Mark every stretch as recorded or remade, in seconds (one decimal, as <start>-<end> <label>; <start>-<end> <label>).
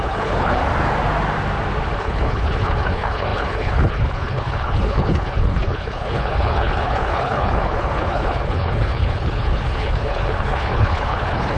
0.0-0.6 remade; 0.6-2.0 recorded; 2.0-11.6 remade